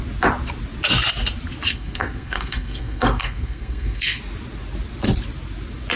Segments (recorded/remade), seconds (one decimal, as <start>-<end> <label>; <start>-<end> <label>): 0.0-1.7 recorded; 1.7-4.2 remade; 4.2-6.0 recorded